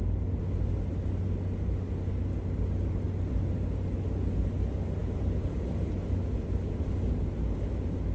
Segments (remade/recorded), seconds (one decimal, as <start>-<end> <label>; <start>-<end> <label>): 0.0-8.1 recorded